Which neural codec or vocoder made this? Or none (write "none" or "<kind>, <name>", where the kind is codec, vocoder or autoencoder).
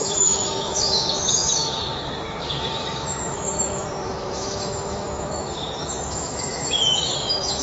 autoencoder, DAC-VAE